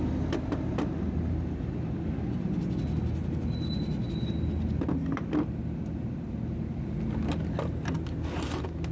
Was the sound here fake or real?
real